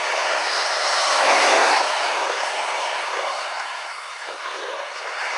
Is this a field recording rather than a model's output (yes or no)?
no